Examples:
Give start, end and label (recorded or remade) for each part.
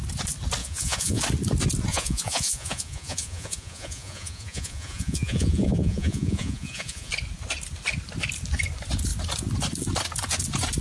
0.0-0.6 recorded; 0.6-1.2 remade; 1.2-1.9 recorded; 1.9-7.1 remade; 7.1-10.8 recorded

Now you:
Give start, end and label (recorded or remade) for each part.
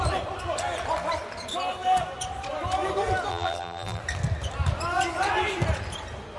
0.0-3.3 recorded; 3.3-4.0 remade; 4.0-6.4 recorded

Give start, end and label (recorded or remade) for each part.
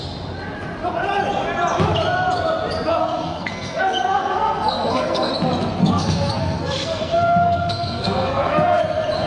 0.0-3.0 recorded; 3.0-5.3 remade; 5.3-5.8 recorded; 5.8-8.8 remade; 8.8-9.3 recorded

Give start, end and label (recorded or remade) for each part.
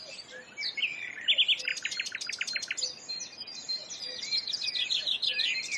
0.0-5.8 recorded